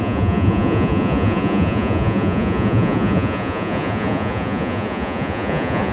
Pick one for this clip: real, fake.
fake